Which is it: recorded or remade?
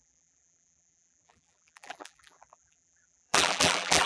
remade